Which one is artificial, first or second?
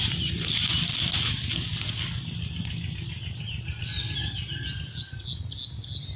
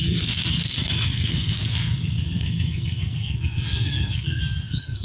second